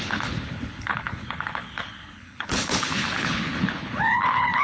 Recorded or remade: remade